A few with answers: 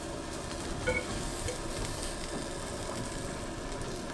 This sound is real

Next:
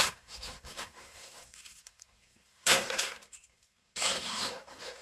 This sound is fake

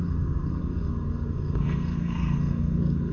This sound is fake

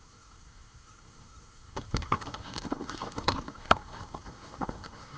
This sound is fake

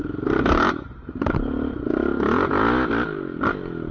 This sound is real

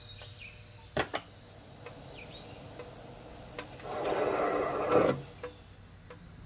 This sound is real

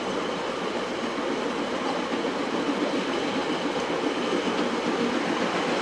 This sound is real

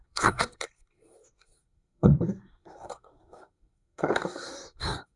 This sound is fake